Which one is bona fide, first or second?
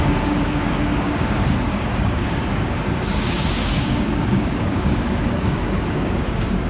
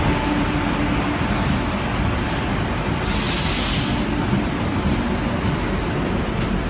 second